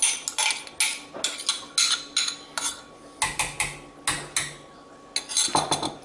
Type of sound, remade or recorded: recorded